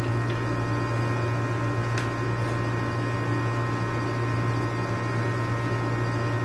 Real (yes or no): yes